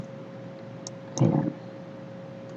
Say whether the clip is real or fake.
real